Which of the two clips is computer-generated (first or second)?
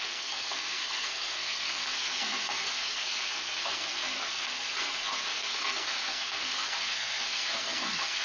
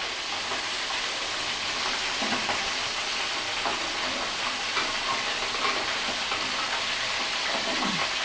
first